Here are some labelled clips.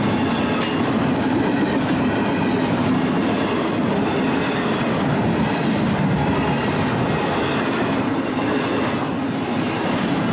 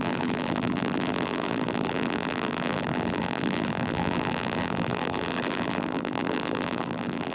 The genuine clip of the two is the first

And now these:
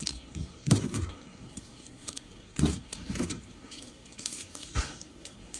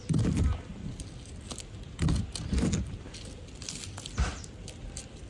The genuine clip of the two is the second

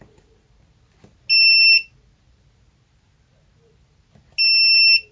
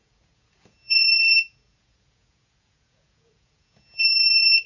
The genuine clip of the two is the first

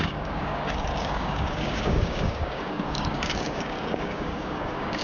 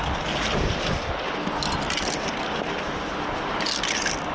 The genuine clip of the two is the second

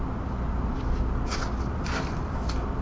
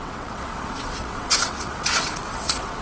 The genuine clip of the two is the first